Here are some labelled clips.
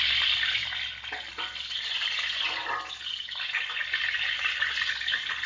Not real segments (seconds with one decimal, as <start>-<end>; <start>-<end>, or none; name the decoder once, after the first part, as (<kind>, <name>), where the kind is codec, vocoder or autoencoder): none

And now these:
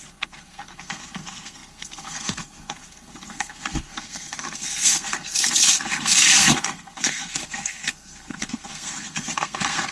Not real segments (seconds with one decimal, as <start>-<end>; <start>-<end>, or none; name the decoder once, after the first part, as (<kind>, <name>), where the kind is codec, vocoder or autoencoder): 0.0-9.9 (codec, SNAC)

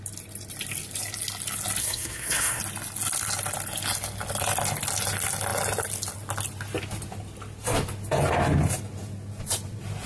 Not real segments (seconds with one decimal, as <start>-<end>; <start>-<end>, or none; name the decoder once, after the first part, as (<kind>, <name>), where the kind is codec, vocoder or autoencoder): 1.8-2.6 (codec, SNAC)

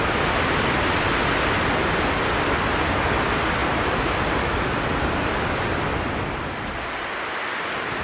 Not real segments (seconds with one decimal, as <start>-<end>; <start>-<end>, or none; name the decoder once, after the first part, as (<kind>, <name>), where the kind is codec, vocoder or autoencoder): none

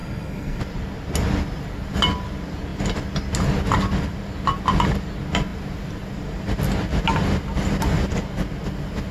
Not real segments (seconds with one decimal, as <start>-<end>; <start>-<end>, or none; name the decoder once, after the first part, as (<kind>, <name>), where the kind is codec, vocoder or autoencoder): 0.0-0.6 (codec, SNAC)

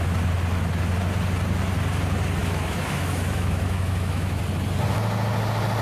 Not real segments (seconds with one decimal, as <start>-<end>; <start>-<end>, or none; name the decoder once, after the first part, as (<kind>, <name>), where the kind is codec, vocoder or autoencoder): 2.4-4.4 (autoencoder, DAC-VAE)